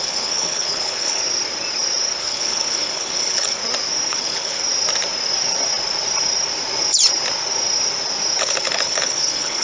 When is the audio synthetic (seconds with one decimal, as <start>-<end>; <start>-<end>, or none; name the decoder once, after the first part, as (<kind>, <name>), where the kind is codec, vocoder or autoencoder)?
0.0-1.2 (codec, HILCodec); 2.2-3.6; 4.1-4.6; 8.4-9.6